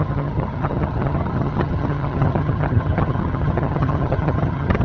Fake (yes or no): yes